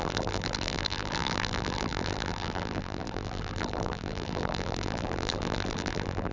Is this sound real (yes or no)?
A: no